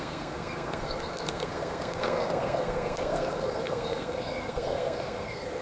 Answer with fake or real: fake